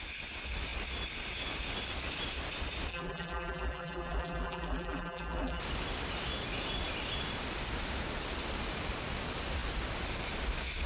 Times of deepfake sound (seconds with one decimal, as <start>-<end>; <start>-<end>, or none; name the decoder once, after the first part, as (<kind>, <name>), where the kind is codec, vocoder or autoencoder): 2.9-5.6 (vocoder, BigVGAN v2)